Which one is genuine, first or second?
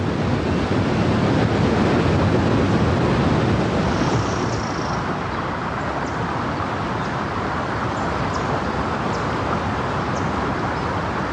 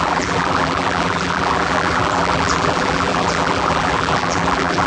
first